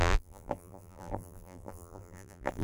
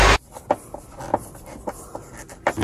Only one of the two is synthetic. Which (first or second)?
first